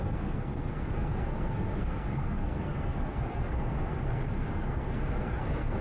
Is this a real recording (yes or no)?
no